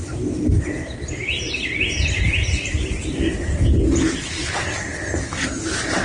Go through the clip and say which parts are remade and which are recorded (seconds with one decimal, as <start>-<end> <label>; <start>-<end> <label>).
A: 0.0-6.0 recorded

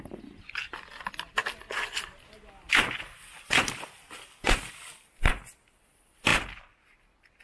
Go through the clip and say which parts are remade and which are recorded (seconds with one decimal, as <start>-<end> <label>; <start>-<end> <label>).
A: 0.0-7.4 recorded

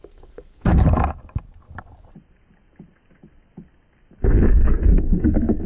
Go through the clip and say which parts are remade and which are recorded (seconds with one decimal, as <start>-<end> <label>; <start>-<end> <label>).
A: 0.0-0.8 remade; 0.8-4.2 recorded; 4.2-5.7 remade

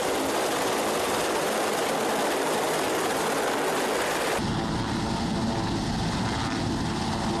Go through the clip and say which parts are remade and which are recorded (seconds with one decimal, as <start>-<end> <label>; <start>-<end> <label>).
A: 0.0-7.4 recorded

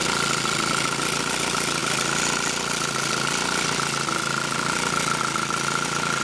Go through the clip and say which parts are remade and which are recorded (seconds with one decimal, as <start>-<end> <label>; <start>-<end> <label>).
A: 0.0-6.2 recorded

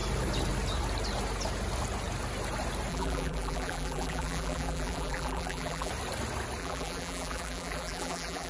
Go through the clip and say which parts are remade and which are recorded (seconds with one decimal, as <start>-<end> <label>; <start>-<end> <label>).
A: 0.0-2.9 recorded; 2.9-5.9 remade; 5.9-6.6 recorded; 6.6-8.5 remade

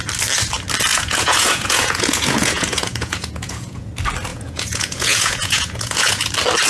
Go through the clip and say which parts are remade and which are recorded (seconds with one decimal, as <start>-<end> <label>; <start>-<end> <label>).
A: 0.0-0.9 recorded; 0.9-3.9 remade; 3.9-4.3 recorded; 4.3-6.3 remade; 6.3-6.7 recorded